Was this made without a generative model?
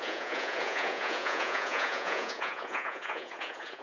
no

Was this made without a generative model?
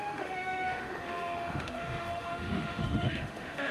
no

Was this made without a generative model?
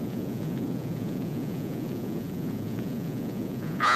no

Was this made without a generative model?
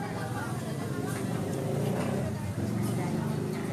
yes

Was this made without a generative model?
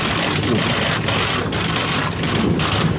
yes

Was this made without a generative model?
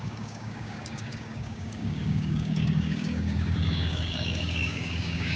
no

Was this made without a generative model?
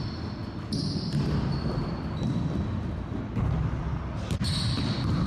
yes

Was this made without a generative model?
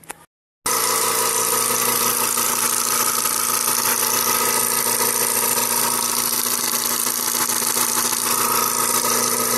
yes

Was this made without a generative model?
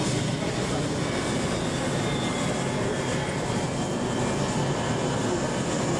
yes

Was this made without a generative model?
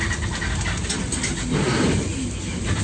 yes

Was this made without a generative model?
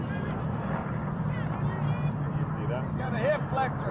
yes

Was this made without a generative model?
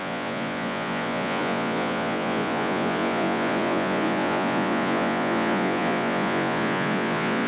no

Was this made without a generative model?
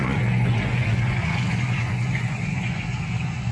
no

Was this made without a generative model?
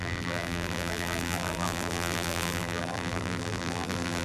no